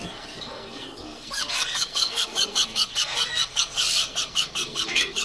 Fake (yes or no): yes